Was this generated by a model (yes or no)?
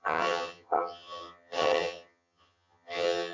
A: yes